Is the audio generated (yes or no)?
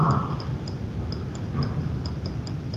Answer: no